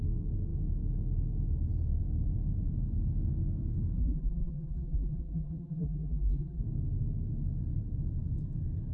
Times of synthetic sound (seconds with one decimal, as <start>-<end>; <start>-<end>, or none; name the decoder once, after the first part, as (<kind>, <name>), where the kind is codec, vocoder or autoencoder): 4.0-6.6 (vocoder, BigVGAN v2)